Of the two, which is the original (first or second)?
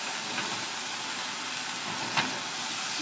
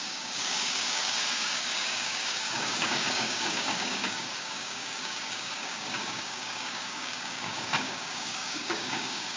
first